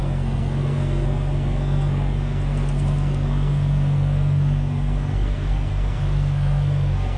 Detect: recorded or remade remade